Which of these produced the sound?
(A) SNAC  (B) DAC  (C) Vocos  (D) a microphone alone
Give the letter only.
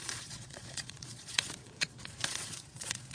C